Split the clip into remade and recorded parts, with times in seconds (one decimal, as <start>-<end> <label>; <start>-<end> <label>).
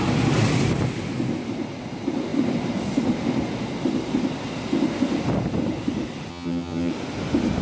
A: 0.0-6.3 recorded; 6.3-6.9 remade; 6.9-7.6 recorded